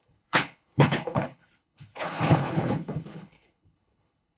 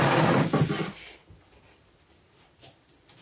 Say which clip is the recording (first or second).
second